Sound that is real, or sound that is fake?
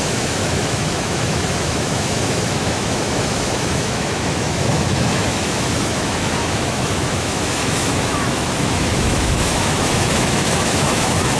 fake